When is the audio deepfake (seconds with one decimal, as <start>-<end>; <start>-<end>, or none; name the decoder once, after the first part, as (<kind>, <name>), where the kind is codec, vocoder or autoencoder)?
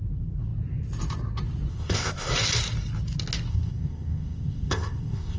1.7-2.3 (codec, ZipCodec); 3.5-5.4